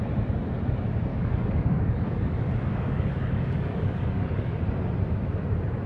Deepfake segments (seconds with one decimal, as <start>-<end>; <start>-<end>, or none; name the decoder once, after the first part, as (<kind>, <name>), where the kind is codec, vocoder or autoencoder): 1.1-4.6 (codec, DAC)

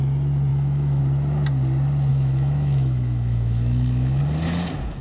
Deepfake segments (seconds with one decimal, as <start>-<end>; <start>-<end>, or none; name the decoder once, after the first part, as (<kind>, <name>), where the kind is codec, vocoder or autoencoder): 0.5-1.0 (autoencoder, DAC-VAE); 2.1-4.2

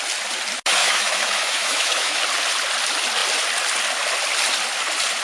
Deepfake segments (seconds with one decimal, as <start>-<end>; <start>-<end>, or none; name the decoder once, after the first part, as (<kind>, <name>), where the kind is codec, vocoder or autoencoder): 0.8-2.2 (autoencoder, DAC-VAE)

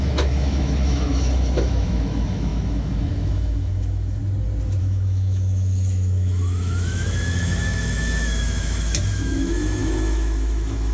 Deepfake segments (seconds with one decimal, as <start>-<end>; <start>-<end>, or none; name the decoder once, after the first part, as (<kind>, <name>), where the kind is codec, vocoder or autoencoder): 0.0-4.2 (autoencoder, DAC-VAE); 4.8-10.9

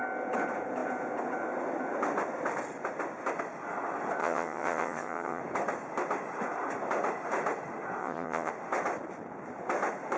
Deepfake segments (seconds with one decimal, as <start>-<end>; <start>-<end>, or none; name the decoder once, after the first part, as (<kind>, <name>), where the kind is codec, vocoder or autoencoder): 4.2-5.4 (vocoder, HiFi-GAN); 8.0-8.5

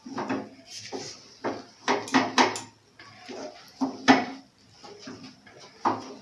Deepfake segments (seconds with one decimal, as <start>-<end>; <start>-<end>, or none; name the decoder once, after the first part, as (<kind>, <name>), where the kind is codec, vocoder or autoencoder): none

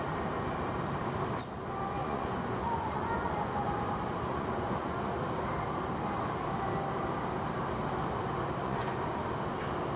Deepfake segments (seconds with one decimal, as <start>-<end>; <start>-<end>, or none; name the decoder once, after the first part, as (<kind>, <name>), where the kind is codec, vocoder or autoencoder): 2.0-3.8 (vocoder, Vocos); 4.3-5.1; 8.6-9.2